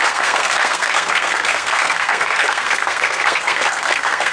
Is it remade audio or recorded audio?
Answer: remade